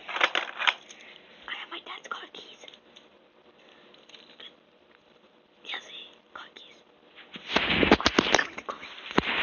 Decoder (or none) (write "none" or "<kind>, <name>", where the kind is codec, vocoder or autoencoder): vocoder, BigVGAN v2